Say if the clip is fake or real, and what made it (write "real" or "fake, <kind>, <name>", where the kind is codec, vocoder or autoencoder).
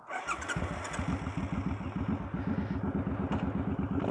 real